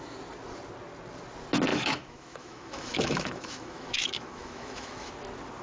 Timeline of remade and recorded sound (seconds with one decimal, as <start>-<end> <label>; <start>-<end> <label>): 0.0-1.7 recorded; 1.7-5.1 remade; 5.1-5.6 recorded

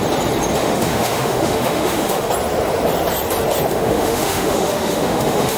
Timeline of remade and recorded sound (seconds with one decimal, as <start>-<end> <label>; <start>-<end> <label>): 0.0-0.6 recorded; 0.6-2.3 remade; 2.3-3.7 recorded; 3.7-5.6 remade

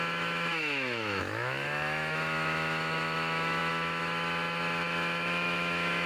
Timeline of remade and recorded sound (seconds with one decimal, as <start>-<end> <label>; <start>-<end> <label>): 0.0-6.1 remade

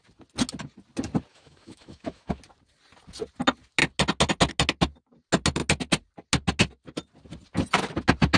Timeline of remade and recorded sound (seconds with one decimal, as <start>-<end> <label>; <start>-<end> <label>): 0.0-1.3 recorded; 1.3-2.4 remade; 2.4-8.4 recorded

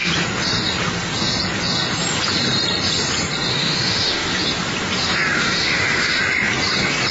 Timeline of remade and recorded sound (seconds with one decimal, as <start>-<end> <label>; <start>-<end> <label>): 0.0-3.5 recorded; 3.5-4.3 remade; 4.3-5.4 recorded; 5.4-6.2 remade; 6.2-7.1 recorded